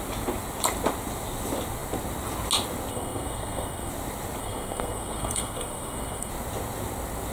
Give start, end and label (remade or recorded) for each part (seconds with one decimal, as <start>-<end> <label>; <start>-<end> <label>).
0.0-2.9 recorded; 2.9-3.9 remade; 3.9-4.4 recorded; 4.4-6.3 remade; 6.3-7.3 recorded